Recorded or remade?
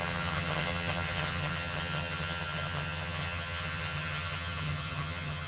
remade